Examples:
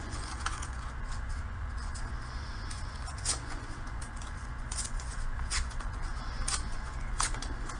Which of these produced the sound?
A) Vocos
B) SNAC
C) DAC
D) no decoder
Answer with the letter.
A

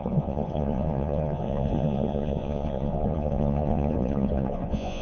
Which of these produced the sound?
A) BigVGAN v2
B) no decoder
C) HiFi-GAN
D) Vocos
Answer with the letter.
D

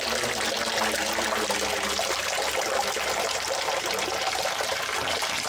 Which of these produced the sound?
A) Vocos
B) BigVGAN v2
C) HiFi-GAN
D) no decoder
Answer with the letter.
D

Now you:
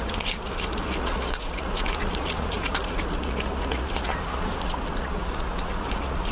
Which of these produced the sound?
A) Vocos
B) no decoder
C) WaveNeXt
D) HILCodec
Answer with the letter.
A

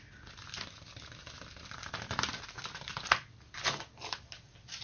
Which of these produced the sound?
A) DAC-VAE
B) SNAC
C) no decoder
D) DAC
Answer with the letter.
C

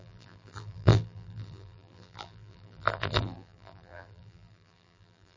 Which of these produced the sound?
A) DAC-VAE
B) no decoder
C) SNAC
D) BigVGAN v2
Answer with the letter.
D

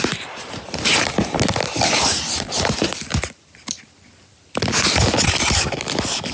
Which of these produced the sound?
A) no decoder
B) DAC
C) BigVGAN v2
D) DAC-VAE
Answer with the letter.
C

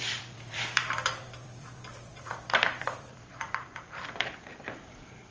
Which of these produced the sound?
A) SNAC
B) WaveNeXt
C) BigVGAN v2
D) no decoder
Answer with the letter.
C